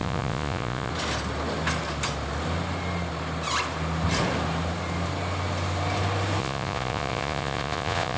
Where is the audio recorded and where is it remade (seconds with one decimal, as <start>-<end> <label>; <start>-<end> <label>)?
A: 0.0-0.9 remade; 0.9-6.4 recorded; 6.4-8.2 remade